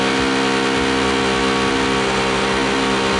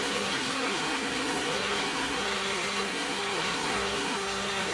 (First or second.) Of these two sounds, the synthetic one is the second